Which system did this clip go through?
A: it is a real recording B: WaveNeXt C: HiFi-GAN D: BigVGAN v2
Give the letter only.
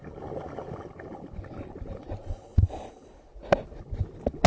A